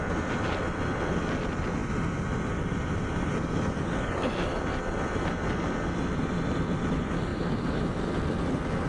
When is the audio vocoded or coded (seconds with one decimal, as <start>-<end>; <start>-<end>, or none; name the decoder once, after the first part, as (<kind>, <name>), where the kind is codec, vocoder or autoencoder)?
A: 1.8-3.9 (vocoder, BigVGAN v2); 7.3-7.9